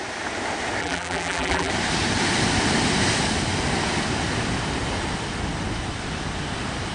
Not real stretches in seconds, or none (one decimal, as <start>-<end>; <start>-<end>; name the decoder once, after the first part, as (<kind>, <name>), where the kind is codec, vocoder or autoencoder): 0.8-1.7 (vocoder, BigVGAN v2)